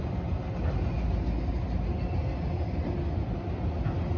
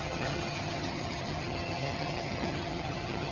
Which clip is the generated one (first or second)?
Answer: second